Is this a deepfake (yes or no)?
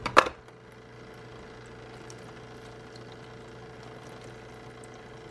no